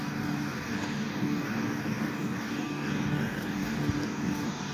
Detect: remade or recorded remade